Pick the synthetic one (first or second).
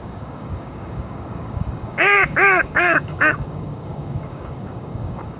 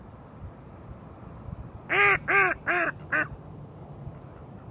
first